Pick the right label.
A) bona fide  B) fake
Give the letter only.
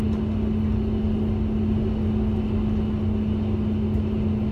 A